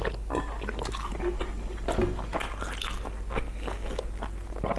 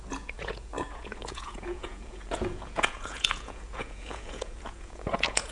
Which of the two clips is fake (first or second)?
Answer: second